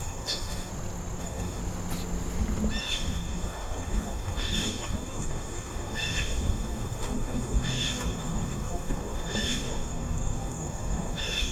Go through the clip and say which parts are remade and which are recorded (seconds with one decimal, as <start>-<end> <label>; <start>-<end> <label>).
0.0-0.7 remade; 0.7-1.2 recorded; 1.2-1.6 remade; 1.6-2.8 recorded; 2.8-11.5 remade